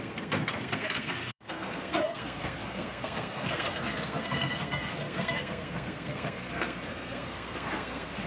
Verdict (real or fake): fake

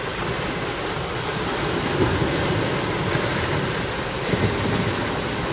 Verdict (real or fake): real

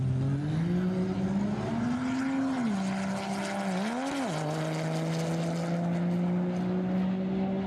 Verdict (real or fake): real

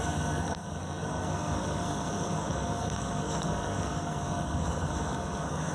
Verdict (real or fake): fake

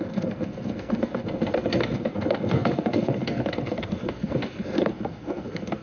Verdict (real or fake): fake